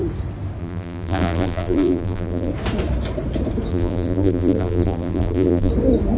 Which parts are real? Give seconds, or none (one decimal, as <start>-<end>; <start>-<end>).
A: 0.0-0.6; 2.5-3.7; 5.7-6.2